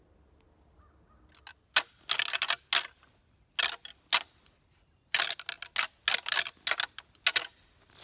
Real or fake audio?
real